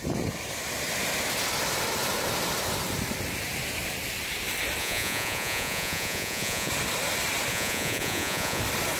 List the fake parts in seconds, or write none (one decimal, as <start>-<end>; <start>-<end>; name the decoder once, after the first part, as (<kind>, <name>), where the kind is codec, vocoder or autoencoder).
4.8-6.7 (vocoder, Vocos); 7.5-8.6